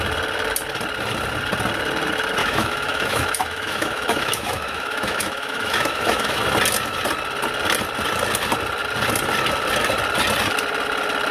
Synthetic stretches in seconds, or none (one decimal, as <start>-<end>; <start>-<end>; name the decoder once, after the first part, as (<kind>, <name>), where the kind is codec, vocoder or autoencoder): 2.4-6.4 (autoencoder, DAC-VAE)